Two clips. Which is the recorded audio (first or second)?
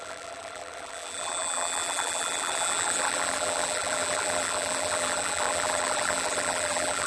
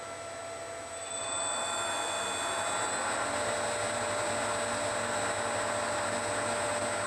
second